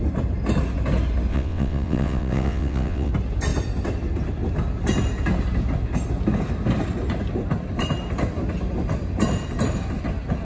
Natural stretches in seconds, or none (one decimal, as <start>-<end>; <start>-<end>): 0.0-1.3; 3.1-10.4